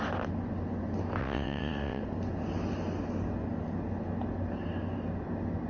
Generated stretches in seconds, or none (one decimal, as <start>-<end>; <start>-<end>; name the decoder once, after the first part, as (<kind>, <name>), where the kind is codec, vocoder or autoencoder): 1.2-2.0 (vocoder, WaveNeXt)